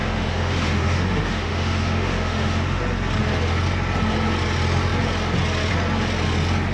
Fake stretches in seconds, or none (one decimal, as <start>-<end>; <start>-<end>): 0.0-2.8